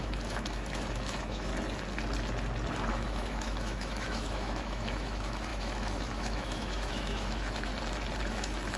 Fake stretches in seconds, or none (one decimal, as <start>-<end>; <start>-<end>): 0.0-1.5; 2.9-7.7; 8.3-8.8